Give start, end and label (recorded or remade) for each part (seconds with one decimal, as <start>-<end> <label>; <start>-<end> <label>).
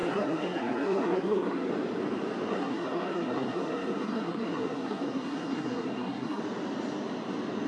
0.0-1.7 remade; 1.7-2.5 recorded; 2.5-6.4 remade; 6.4-7.7 recorded